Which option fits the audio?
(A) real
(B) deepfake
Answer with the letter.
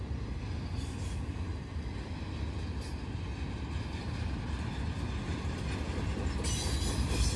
A